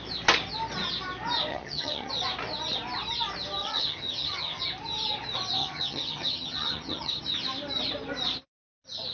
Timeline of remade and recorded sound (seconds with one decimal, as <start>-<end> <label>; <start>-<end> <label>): 0.0-1.5 recorded; 1.5-2.1 remade; 2.1-3.6 recorded; 3.6-4.6 remade; 4.6-5.6 recorded; 5.6-7.2 remade; 7.2-9.1 recorded